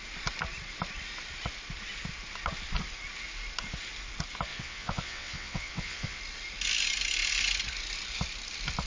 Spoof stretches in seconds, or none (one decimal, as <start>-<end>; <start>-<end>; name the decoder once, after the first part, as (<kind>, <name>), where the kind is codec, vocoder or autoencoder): 4.5-6.2 (vocoder, WaveNeXt)